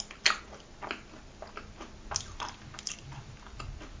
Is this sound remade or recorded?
recorded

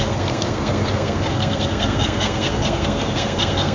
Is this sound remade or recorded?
remade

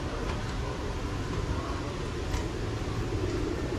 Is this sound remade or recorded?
recorded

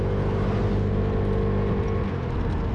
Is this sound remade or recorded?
recorded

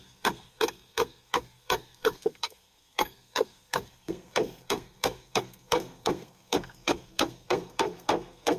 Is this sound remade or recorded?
remade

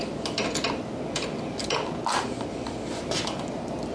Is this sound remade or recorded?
recorded